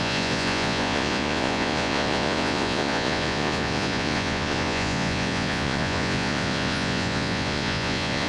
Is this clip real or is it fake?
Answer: fake